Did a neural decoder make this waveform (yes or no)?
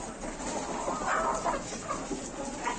no